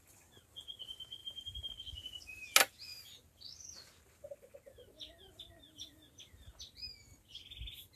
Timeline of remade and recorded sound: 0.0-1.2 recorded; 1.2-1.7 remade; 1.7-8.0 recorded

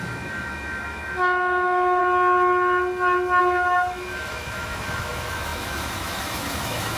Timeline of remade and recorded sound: 0.0-2.0 remade; 2.0-3.4 recorded; 3.4-7.0 remade

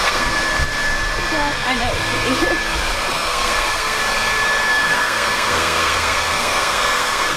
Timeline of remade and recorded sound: 0.0-0.4 remade; 0.4-3.1 recorded; 3.1-4.0 remade; 4.0-4.7 recorded; 4.7-7.4 remade

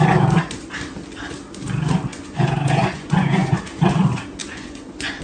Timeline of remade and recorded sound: 0.0-2.1 recorded; 2.1-3.6 remade; 3.6-4.4 recorded; 4.4-5.2 remade

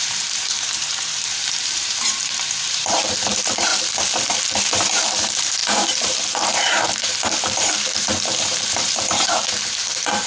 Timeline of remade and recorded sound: 0.0-3.7 remade; 3.7-4.4 recorded; 4.4-10.3 remade

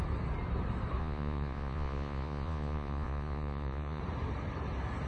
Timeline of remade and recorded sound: 0.0-1.0 recorded; 1.0-4.0 remade; 4.0-5.1 recorded

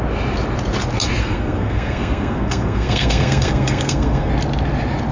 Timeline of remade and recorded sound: 0.0-1.2 recorded; 1.2-4.3 remade; 4.3-5.1 recorded

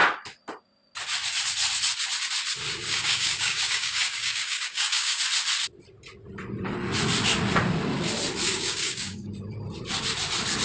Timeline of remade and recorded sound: 0.0-2.8 recorded; 2.8-5.2 remade; 5.2-8.5 recorded; 8.5-9.3 remade; 9.3-10.6 recorded